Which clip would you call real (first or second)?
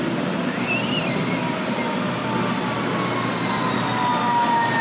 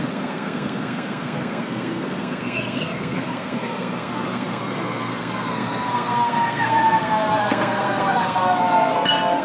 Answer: first